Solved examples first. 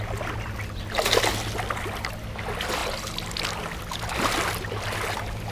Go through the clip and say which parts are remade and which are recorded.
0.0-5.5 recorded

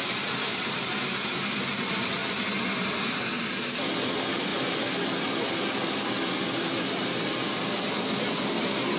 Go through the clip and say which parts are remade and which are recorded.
0.0-9.0 remade

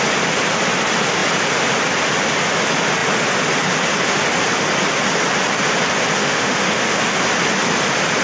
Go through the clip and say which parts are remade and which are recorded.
0.0-6.2 recorded; 6.2-7.0 remade; 7.0-8.2 recorded